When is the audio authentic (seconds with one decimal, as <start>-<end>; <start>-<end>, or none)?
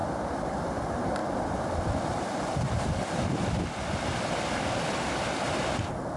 0.7-1.2; 4.9-6.2